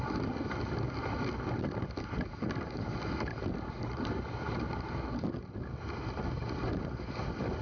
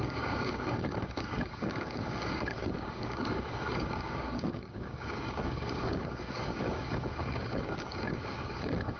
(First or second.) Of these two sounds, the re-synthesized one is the second